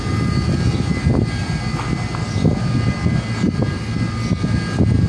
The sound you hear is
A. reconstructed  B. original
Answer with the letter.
B